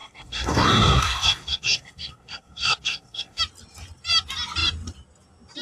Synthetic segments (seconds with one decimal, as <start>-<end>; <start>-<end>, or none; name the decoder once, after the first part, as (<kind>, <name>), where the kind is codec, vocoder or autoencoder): 0.0-3.4 (codec, SNAC)